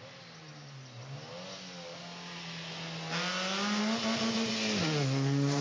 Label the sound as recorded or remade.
recorded